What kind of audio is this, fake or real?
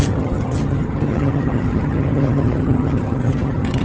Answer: fake